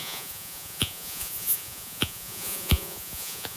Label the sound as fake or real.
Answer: fake